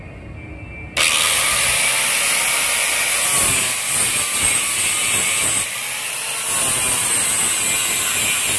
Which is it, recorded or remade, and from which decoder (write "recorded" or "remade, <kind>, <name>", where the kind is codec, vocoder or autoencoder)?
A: recorded